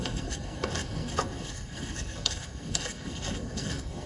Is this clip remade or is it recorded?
remade